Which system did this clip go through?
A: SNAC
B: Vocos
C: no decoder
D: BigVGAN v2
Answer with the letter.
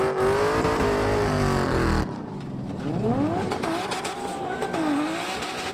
C